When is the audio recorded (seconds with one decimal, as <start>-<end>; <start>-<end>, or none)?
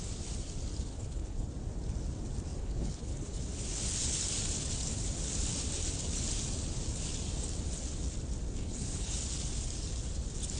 0.0-0.9; 1.5-2.6; 3.4-8.6; 9.1-10.6